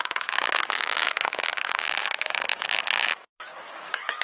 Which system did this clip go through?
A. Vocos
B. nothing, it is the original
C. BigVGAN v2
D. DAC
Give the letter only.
D